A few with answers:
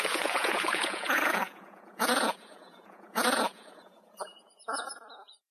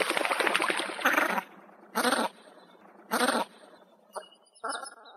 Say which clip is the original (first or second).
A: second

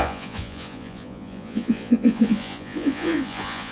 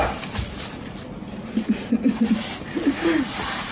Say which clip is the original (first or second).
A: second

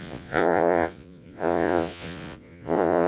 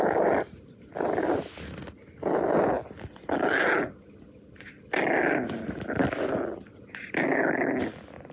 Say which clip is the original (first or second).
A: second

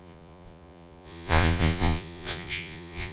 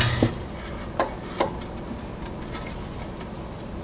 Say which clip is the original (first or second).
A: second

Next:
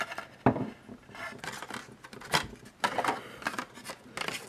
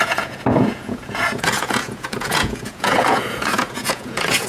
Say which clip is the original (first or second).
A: first